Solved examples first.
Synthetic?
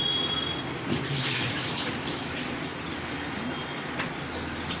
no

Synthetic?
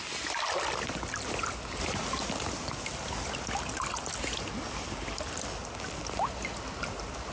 no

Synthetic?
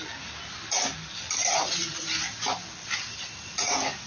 no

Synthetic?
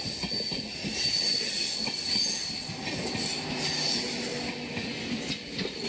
no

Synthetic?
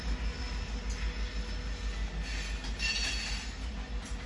no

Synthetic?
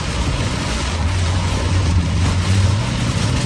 yes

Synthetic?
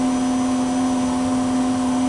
no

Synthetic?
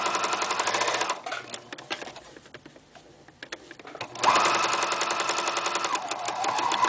no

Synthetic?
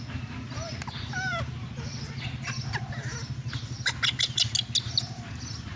no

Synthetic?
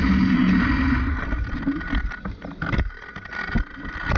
no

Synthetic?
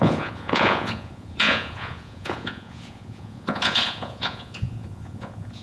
yes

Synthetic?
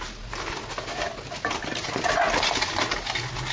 no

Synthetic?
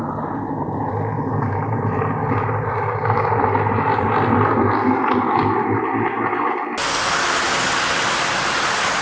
no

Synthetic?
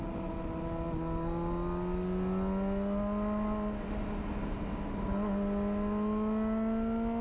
no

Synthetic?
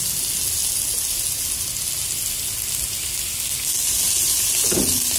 no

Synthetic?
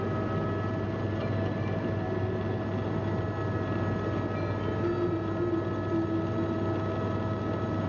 no